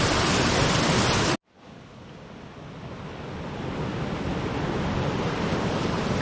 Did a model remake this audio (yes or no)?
no